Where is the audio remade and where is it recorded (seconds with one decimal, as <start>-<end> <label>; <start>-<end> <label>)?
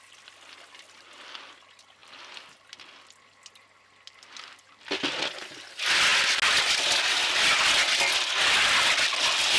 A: 0.0-9.6 recorded